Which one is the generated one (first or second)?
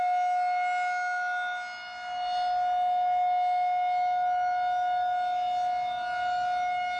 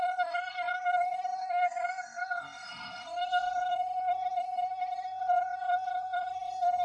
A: second